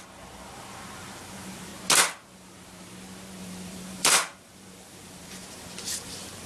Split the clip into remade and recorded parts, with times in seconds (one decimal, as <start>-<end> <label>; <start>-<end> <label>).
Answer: 0.0-1.7 remade; 1.7-3.4 recorded; 3.4-6.5 remade